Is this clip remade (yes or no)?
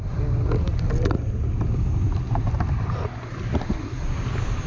no